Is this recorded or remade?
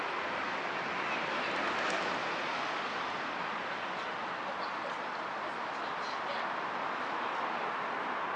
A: recorded